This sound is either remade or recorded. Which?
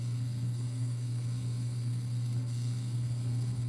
remade